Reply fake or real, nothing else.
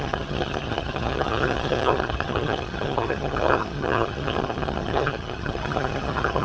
fake